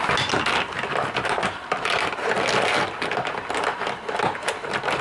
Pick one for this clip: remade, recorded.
recorded